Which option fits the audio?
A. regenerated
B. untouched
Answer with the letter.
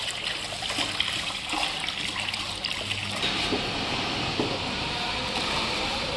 B